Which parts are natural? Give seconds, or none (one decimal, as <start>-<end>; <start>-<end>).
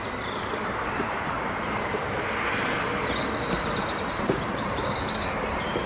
2.0-3.8